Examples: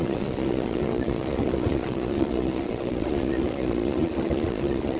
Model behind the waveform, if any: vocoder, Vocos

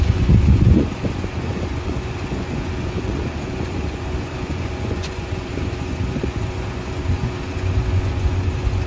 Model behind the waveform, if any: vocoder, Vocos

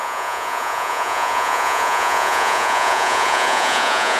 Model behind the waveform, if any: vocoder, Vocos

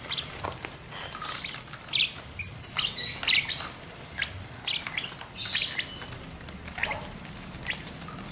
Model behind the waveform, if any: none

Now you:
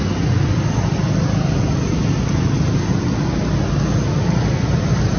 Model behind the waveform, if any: none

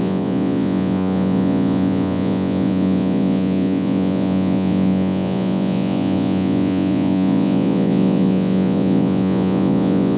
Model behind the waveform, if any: vocoder, Vocos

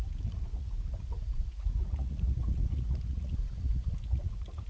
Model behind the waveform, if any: vocoder, Vocos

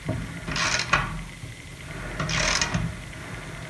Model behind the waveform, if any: none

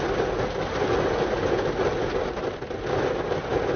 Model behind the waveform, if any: none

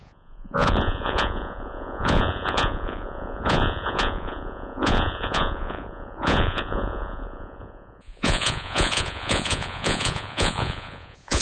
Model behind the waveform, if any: vocoder, Vocos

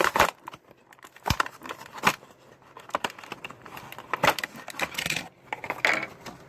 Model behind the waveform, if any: none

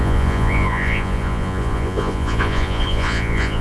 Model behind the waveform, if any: vocoder, Vocos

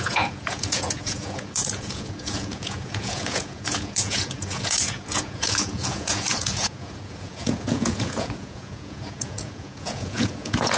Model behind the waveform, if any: vocoder, Vocos